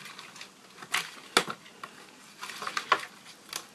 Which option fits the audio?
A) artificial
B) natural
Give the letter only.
B